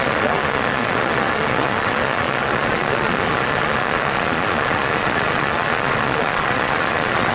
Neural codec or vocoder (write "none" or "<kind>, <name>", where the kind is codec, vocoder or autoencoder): vocoder, Vocos